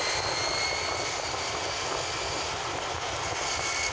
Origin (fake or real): real